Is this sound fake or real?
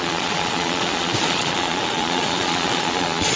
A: fake